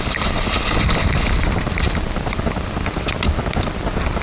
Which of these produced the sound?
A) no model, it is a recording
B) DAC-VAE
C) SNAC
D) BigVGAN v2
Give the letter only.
A